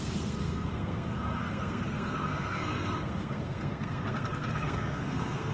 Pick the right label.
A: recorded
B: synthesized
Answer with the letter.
B